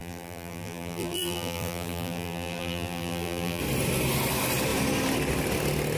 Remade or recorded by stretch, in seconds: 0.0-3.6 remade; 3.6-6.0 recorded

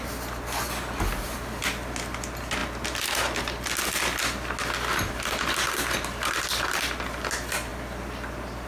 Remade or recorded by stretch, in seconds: 0.0-7.7 recorded; 7.7-8.7 remade

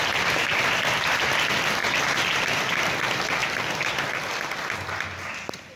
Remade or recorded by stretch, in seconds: 0.0-3.4 recorded; 3.4-4.2 remade; 4.2-5.8 recorded

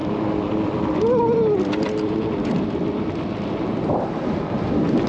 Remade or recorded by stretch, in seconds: 0.0-3.1 remade; 3.1-5.1 recorded

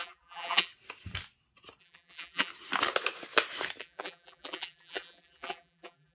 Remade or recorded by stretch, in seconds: 0.0-0.7 remade; 0.7-1.8 recorded; 1.8-2.5 remade; 2.5-3.8 recorded; 3.8-6.1 remade

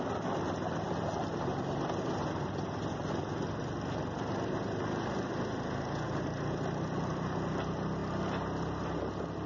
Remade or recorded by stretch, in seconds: 0.0-9.5 recorded

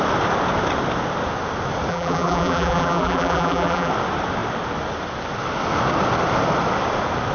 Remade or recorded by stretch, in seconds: 0.0-1.9 recorded; 1.9-3.9 remade; 3.9-7.3 recorded